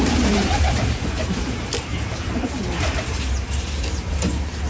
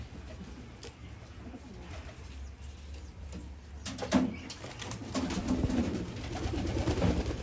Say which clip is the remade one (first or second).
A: first